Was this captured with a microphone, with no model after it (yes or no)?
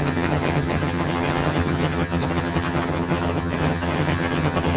no